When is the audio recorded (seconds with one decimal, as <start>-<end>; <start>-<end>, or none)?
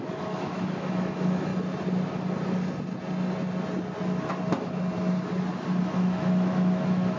1.5-5.8